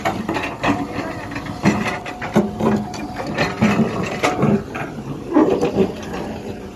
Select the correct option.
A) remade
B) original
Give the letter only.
B